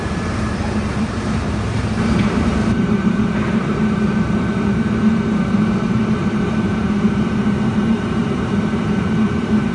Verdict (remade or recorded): remade